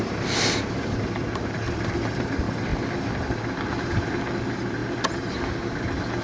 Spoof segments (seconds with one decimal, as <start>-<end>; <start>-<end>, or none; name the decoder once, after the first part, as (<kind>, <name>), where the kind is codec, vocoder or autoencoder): none